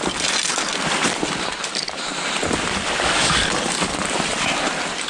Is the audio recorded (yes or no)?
yes